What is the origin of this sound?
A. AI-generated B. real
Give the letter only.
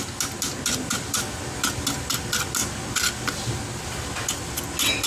B